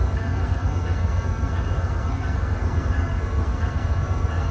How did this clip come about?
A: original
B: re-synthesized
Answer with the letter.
B